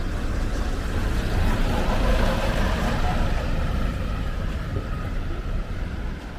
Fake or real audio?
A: fake